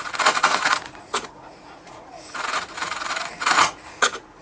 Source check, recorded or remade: remade